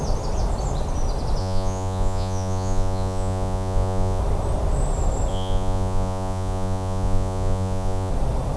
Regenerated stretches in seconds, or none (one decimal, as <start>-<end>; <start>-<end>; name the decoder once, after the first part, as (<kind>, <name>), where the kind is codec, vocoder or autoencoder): 1.4-4.2 (vocoder, Vocos); 5.3-8.1